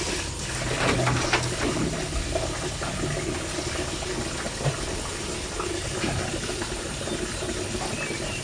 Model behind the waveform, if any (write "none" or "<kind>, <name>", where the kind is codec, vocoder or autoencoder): none